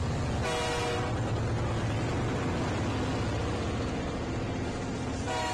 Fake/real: real